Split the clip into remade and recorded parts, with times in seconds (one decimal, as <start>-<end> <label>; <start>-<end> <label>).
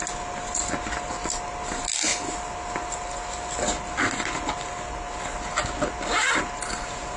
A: 0.0-7.2 recorded